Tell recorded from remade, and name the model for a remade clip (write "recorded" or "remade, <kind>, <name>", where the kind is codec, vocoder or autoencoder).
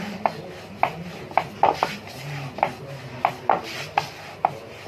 recorded